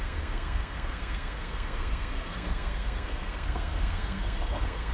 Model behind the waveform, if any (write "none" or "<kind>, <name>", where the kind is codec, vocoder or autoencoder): codec, SNAC